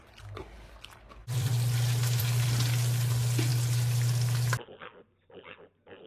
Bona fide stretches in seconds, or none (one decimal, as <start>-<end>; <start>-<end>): 0.0-1.2; 2.5-6.1

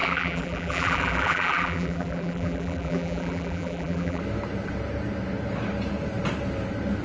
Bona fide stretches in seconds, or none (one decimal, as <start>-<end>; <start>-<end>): 4.2-7.0

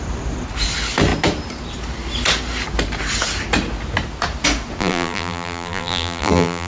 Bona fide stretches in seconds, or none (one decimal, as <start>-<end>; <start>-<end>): 0.0-4.8

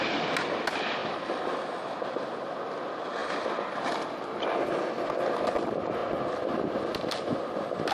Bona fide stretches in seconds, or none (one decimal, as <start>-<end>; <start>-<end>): 0.0-3.2; 3.9-7.9

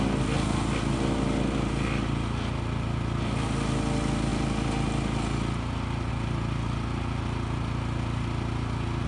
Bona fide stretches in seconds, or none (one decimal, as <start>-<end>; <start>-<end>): 0.0-9.1